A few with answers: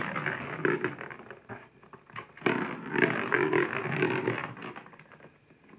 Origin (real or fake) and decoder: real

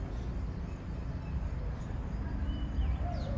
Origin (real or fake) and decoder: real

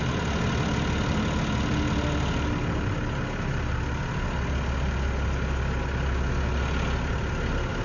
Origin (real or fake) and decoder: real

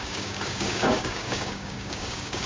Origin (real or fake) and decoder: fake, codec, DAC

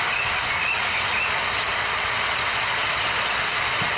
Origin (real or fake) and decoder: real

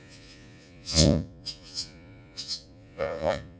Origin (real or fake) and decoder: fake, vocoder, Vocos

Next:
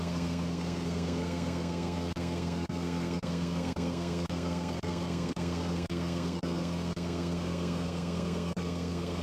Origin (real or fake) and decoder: fake, codec, SNAC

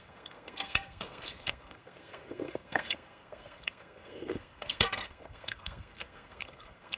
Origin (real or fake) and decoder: fake, codec, SNAC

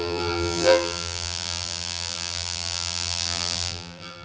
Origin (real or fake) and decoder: fake, vocoder, BigVGAN v2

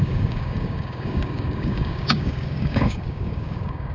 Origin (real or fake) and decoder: fake, codec, DAC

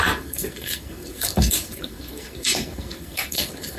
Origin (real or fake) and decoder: fake, codec, SNAC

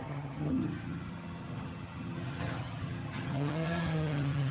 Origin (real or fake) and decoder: fake, vocoder, HiFi-GAN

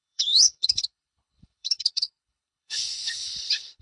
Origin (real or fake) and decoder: fake, codec, HILCodec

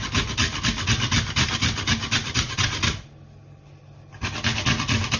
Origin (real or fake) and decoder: real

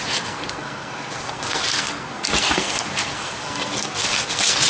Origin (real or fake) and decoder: fake, codec, SNAC